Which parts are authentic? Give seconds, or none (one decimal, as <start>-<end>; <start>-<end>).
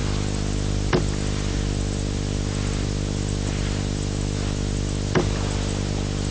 0.0-6.3